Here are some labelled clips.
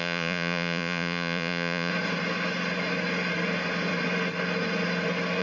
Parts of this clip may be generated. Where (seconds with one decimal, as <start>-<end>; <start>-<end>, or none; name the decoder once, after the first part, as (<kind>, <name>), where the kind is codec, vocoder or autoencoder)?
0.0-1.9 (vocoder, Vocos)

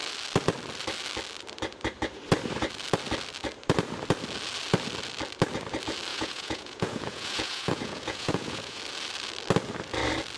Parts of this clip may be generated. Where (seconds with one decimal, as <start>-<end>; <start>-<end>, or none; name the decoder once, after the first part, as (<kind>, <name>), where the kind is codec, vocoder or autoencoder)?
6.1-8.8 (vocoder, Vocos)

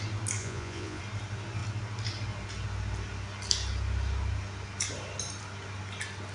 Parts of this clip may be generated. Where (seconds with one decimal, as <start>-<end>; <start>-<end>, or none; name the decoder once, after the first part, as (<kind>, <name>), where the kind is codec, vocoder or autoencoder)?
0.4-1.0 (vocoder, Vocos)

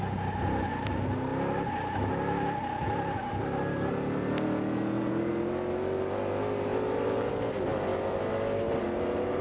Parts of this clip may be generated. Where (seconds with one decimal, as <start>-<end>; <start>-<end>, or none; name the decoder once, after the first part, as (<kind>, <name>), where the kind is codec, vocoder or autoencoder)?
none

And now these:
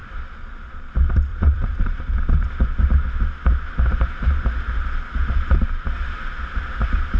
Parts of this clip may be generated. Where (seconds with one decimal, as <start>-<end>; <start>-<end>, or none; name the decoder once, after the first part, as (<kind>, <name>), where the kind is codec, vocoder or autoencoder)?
1.3-2.0 (vocoder, Vocos)

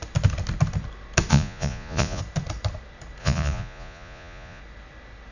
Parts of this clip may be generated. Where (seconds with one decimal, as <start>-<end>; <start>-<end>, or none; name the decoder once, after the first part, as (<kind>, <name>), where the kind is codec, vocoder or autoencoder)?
1.3-2.2 (vocoder, Vocos); 3.2-4.6